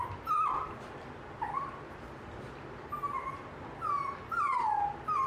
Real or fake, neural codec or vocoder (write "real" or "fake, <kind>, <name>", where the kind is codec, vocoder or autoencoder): real